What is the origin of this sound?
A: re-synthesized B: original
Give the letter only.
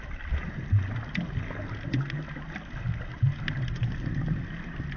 B